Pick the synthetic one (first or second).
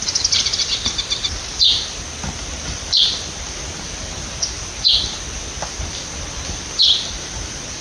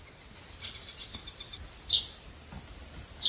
first